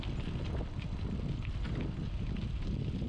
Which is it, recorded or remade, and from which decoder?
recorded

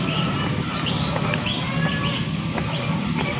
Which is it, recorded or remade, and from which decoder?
recorded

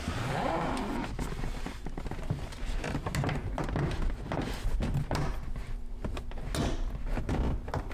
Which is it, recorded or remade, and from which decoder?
recorded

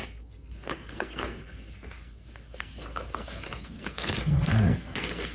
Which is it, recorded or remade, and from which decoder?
remade, codec, SNAC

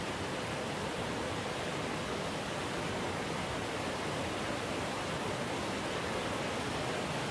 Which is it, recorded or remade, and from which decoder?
recorded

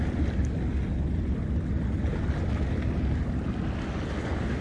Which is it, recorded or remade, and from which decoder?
recorded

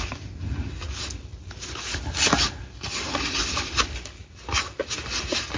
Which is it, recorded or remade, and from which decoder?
recorded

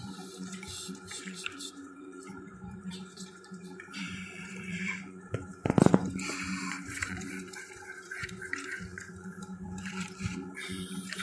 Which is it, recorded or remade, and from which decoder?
remade, vocoder, Vocos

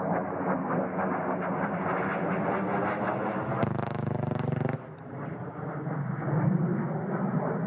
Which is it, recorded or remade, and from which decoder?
recorded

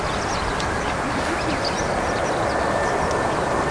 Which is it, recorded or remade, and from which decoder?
recorded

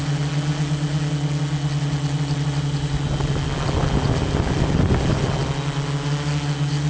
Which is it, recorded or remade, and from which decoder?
recorded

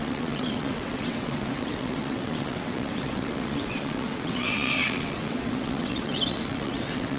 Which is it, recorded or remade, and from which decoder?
remade, vocoder, WaveNeXt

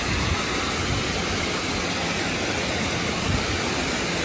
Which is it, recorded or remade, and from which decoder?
recorded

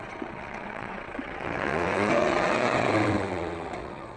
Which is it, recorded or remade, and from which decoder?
remade, vocoder, WaveNeXt